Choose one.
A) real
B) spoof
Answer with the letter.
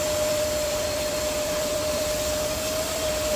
B